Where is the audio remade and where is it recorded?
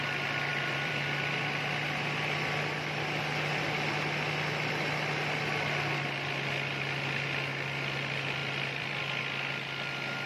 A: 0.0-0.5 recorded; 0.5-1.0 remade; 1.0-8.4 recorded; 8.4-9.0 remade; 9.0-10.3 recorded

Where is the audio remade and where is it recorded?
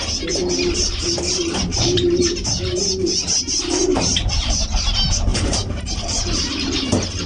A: 0.0-1.7 recorded; 1.7-2.5 remade; 2.5-5.3 recorded; 5.3-6.3 remade; 6.3-7.3 recorded